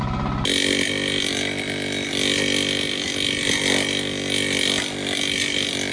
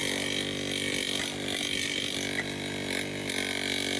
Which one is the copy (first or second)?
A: second